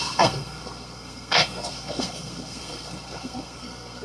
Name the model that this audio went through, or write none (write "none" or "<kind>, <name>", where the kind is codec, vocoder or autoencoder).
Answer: codec, SNAC